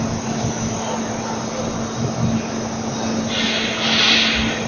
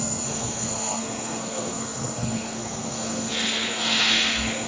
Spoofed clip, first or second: second